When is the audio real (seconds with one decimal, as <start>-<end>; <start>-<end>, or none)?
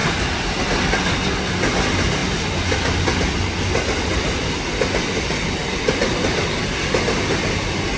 0.0-5.6; 6.4-8.0